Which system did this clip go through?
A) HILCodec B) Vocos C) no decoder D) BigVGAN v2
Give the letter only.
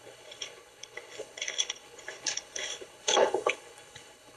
A